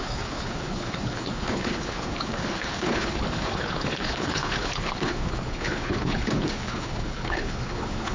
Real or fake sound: fake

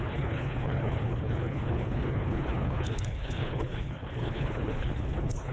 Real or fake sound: fake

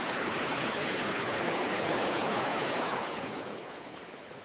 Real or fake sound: fake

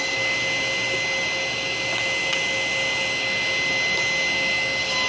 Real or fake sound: real